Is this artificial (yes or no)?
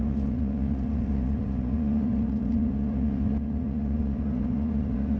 yes